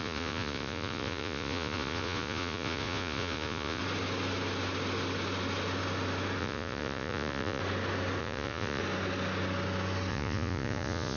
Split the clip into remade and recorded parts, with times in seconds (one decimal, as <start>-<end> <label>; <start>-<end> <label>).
0.0-3.8 remade; 3.8-6.4 recorded; 6.4-7.6 remade; 7.6-8.2 recorded; 8.2-8.8 remade; 8.8-10.1 recorded; 10.1-11.2 remade